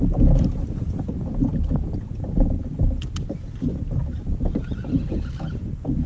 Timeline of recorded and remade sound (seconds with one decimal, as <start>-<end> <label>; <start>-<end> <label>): 0.0-6.1 recorded